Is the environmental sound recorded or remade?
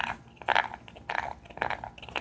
recorded